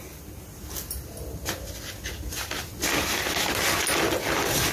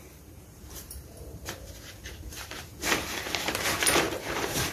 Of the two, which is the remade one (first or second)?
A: second